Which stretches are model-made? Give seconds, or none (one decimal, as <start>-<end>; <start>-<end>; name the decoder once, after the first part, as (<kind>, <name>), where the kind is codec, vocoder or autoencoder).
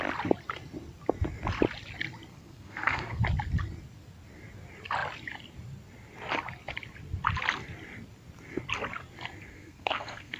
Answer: 2.3-3.2 (codec, SNAC); 9.5-10.4